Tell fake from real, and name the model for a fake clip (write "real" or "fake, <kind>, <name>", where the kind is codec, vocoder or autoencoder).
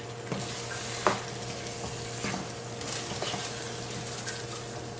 real